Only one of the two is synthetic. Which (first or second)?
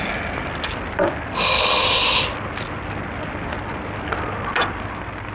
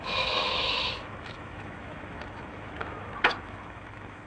second